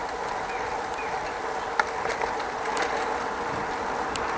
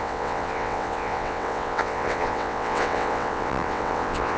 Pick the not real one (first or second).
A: second